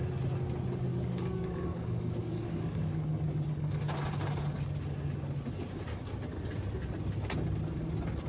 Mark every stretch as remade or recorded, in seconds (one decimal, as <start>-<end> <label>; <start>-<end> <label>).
0.0-0.9 recorded; 0.9-3.8 remade; 3.8-8.3 recorded